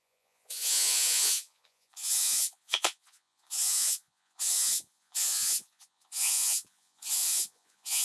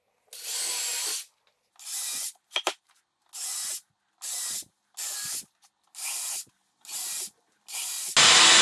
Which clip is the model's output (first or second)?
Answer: first